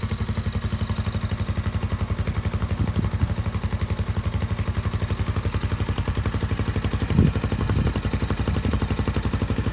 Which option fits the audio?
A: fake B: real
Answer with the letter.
B